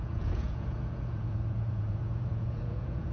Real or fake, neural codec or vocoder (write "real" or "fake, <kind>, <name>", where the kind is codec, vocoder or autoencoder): fake, vocoder, Vocos